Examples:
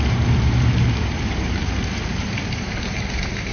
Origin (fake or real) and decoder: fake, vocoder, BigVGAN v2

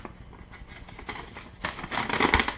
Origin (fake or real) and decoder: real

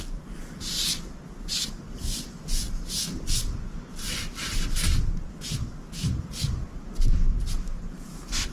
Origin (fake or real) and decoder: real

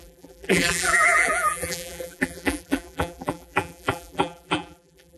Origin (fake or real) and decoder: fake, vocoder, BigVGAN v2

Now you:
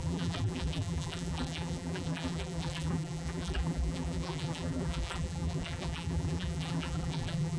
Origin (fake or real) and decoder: fake, vocoder, BigVGAN v2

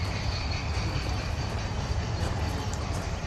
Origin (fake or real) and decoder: fake, vocoder, BigVGAN v2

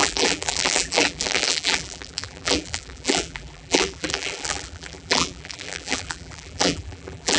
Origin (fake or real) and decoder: fake, vocoder, BigVGAN v2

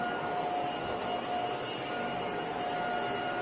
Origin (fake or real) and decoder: real